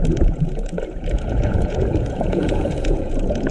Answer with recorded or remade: remade